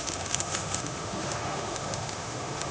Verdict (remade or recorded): remade